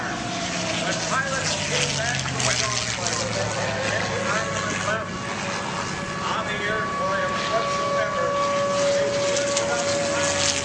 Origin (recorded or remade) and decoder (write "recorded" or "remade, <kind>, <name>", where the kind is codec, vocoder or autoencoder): recorded